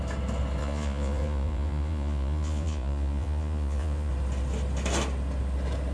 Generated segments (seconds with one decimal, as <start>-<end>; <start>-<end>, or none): 0.6-4.1